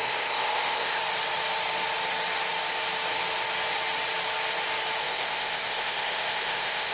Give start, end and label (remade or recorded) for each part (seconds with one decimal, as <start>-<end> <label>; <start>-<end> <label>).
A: 0.0-1.0 remade; 1.0-5.0 recorded; 5.0-6.9 remade